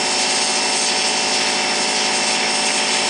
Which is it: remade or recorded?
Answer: recorded